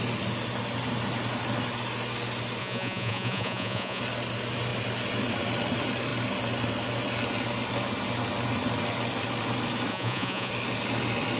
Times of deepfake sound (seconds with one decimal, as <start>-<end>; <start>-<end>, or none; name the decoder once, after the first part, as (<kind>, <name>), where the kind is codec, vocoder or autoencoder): 2.6-4.0 (vocoder, Vocos); 9.9-10.5